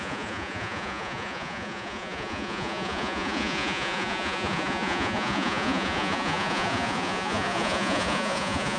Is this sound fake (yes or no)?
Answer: yes